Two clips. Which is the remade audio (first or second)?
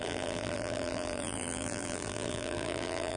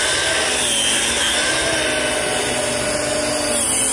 first